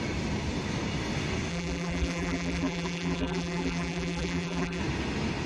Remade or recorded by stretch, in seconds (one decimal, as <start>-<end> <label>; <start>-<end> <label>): 0.0-1.5 recorded; 1.5-4.8 remade; 4.8-5.5 recorded